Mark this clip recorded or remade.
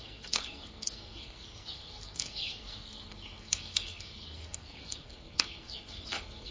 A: remade